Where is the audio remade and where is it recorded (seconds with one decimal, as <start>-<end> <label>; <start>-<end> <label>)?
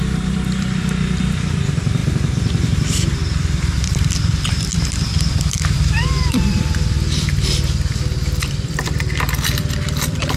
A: 0.0-2.0 remade; 2.0-3.6 recorded; 3.6-4.7 remade; 4.7-6.3 recorded; 6.3-10.4 remade